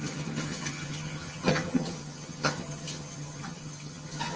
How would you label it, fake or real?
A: fake